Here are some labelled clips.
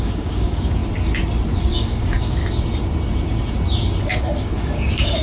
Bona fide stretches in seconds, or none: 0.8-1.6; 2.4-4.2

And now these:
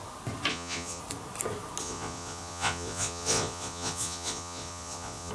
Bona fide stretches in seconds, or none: 0.0-0.5; 1.0-1.8

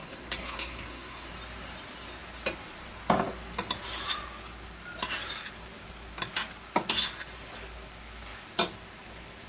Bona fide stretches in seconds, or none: 1.3-9.5